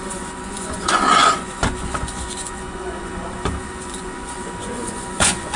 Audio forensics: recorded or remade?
remade